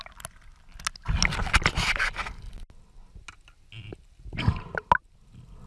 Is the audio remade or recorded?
recorded